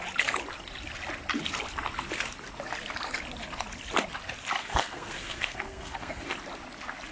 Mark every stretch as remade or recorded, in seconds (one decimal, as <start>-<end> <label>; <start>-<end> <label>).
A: 0.0-4.6 recorded; 4.6-6.3 remade; 6.3-7.1 recorded